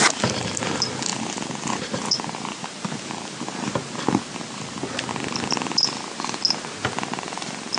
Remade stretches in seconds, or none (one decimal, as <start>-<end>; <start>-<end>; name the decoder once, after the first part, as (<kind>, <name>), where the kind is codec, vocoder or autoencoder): none